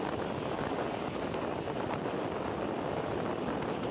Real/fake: real